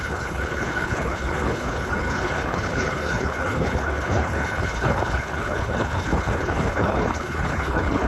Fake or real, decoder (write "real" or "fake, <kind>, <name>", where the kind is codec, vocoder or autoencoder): fake, codec, HILCodec